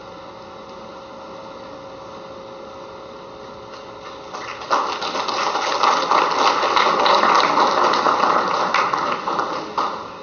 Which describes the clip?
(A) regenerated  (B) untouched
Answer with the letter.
B